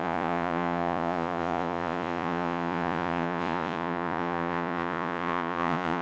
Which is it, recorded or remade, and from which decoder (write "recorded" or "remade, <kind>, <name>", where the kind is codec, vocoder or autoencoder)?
remade, vocoder, Vocos